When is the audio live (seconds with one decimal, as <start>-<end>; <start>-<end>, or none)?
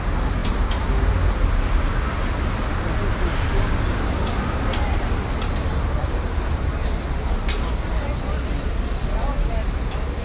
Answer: 0.0-10.2